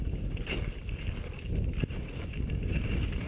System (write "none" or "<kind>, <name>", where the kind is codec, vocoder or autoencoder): none